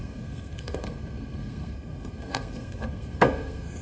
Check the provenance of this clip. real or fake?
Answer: fake